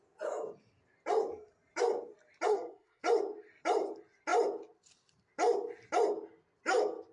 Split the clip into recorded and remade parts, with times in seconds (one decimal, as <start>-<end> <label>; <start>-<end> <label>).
0.0-2.5 recorded; 2.5-3.0 remade; 3.0-7.1 recorded